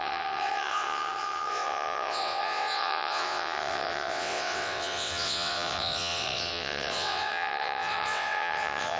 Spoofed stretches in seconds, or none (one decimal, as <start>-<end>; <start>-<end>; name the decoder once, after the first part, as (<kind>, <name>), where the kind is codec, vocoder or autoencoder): 0.0-9.0 (vocoder, WaveNeXt)